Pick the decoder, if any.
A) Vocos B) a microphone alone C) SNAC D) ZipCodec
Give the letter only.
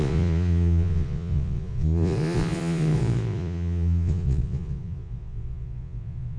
A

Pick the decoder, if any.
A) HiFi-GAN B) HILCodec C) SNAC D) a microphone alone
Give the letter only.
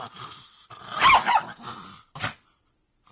D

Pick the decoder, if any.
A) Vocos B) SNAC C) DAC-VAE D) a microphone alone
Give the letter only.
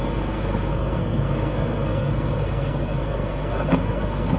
B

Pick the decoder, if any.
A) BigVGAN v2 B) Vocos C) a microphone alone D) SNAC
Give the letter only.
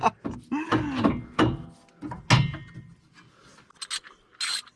C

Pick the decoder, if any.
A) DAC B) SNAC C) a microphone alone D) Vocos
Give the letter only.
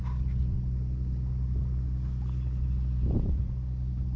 C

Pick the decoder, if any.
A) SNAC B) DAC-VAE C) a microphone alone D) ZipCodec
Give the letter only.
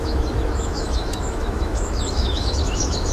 B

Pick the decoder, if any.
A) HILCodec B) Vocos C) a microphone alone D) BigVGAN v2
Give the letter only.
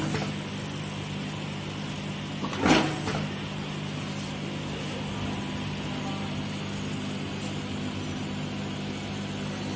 C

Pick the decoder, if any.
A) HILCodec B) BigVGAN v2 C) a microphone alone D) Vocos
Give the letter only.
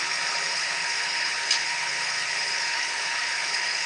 A